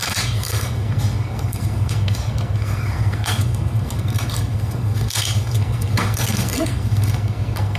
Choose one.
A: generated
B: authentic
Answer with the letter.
A